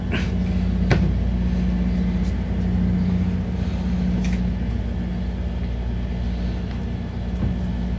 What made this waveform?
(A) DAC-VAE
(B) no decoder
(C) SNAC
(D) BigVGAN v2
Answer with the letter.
B